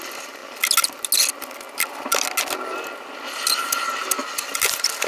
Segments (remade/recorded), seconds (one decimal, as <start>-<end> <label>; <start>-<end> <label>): 0.0-5.1 recorded